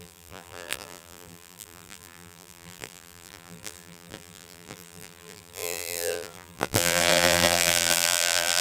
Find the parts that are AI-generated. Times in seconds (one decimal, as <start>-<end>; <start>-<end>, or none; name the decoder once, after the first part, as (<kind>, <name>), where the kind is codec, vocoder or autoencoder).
0.0-8.6 (vocoder, BigVGAN v2)